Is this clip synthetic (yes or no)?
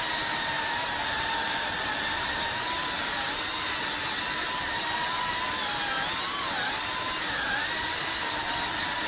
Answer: no